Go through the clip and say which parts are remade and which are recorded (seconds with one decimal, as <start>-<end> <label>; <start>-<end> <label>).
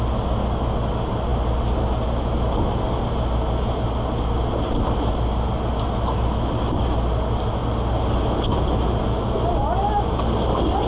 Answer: 0.0-10.9 recorded